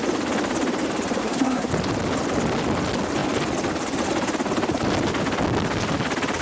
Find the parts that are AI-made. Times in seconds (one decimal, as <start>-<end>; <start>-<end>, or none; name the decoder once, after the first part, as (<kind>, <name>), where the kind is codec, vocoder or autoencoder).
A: 1.2-1.7 (codec, SNAC)